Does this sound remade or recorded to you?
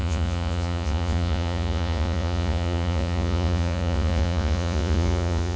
remade